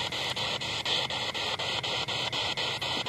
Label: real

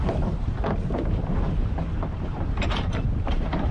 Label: fake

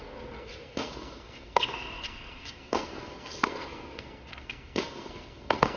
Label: fake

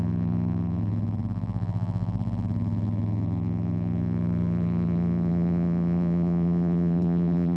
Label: fake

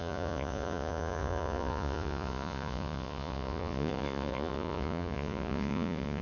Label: fake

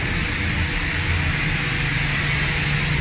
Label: real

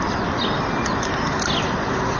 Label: real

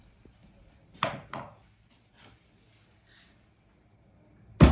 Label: real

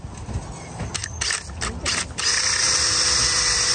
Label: real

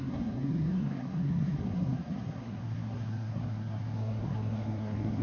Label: fake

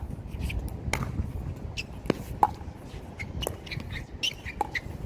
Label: real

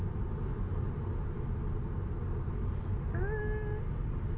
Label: real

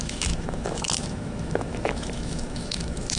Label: fake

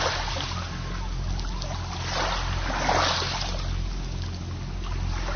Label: real